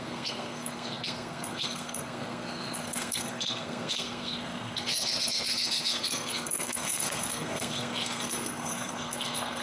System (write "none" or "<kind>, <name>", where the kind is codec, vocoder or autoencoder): codec, SNAC